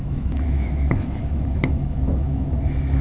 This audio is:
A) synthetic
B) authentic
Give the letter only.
A